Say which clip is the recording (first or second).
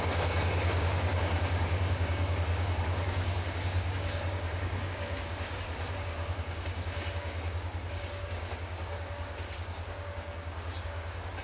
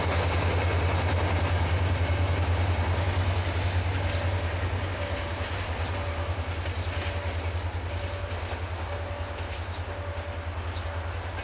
second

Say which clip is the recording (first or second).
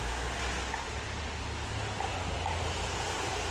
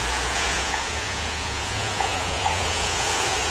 first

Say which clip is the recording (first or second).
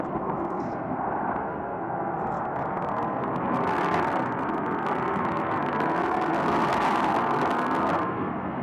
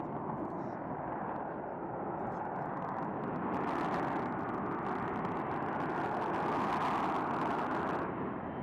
second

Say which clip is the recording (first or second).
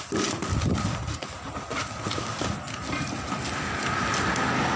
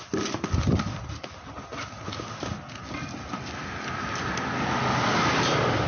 second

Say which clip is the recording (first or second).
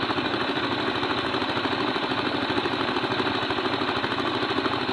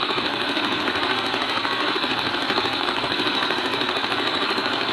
first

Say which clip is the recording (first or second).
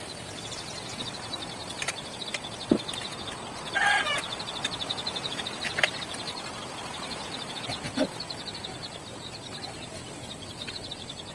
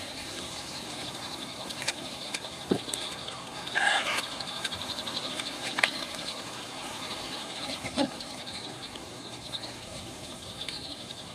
first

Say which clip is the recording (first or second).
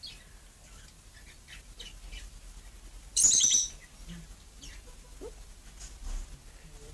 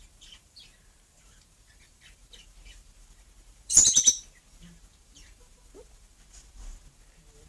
first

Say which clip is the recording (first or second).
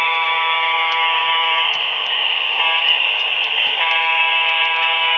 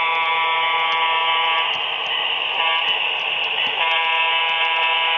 second